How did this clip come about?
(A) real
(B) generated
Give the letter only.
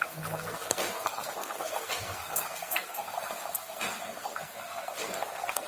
B